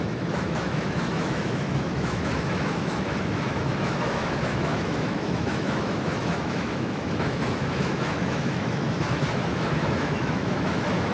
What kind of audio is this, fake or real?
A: fake